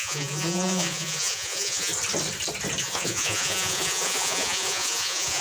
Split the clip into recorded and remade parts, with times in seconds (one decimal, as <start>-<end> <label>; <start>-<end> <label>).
0.0-1.9 remade; 1.9-2.8 recorded; 2.8-5.4 remade